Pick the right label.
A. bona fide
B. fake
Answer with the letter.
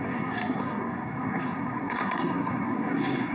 B